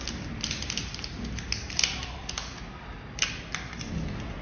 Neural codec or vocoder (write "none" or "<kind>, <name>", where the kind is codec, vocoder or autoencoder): none